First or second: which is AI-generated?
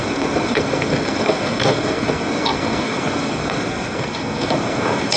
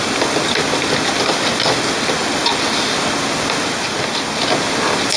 first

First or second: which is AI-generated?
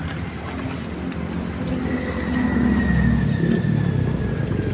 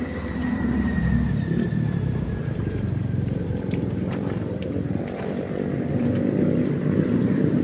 second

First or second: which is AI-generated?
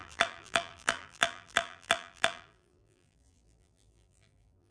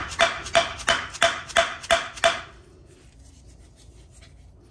first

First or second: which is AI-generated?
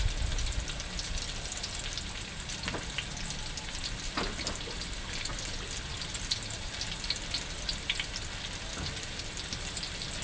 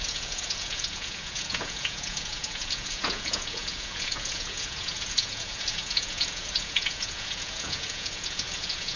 second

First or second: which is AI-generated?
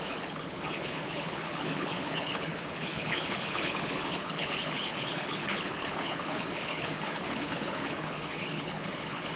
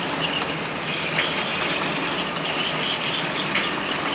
first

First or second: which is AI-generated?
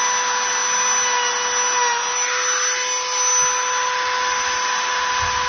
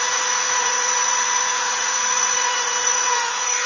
second